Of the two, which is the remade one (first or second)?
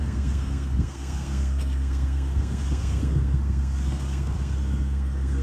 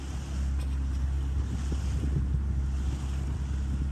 first